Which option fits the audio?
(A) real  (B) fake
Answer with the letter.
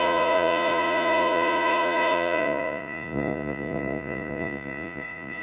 B